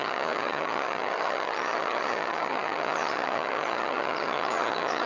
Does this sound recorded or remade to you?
remade